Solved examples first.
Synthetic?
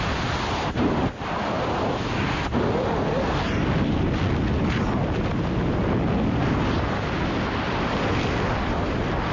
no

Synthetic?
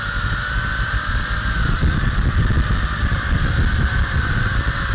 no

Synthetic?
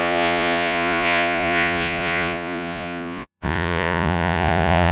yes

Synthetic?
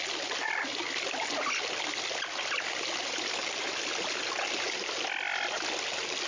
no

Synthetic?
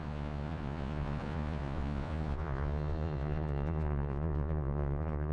yes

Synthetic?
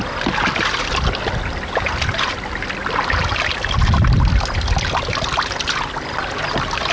no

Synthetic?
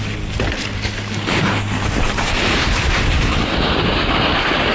no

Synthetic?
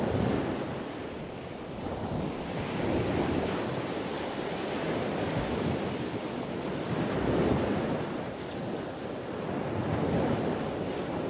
no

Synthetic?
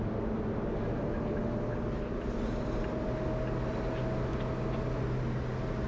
no